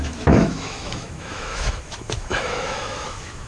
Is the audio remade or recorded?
remade